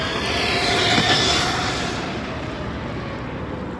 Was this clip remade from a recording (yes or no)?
no